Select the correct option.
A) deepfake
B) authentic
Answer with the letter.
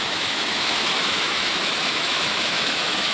A